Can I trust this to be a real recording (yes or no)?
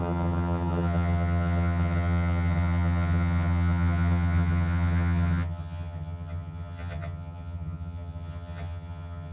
no